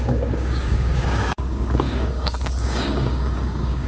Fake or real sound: fake